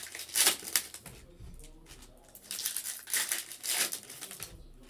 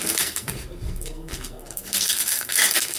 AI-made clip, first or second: second